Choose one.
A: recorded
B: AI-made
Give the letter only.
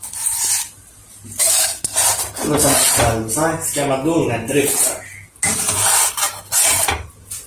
A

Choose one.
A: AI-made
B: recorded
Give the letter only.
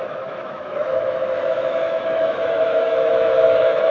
A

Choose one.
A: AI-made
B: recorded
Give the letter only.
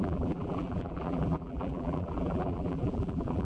A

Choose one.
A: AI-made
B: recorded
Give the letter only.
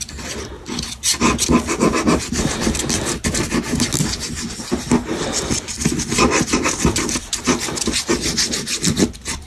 B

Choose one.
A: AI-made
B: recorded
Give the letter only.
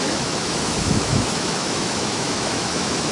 A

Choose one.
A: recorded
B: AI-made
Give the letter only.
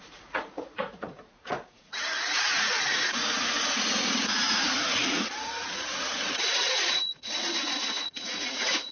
B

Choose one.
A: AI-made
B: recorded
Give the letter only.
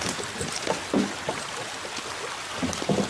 B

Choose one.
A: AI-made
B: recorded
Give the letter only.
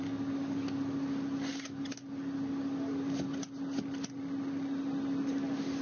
B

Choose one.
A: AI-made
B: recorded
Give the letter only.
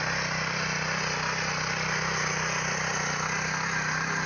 B